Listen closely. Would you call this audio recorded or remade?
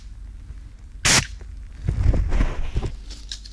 recorded